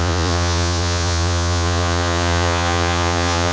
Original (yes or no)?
no